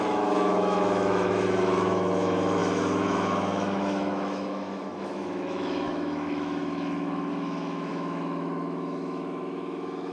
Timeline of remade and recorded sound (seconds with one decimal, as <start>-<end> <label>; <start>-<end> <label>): 0.0-10.1 remade